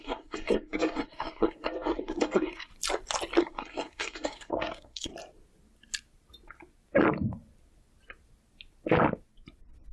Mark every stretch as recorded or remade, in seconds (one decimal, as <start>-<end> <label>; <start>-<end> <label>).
0.0-2.7 remade; 2.7-3.4 recorded; 3.4-5.1 remade; 5.1-9.9 recorded